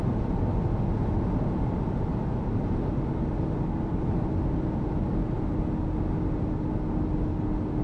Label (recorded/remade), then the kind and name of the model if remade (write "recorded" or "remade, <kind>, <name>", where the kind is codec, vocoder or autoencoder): recorded